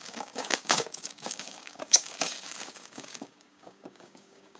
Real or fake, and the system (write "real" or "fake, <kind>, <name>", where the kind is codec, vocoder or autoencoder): fake, codec, DAC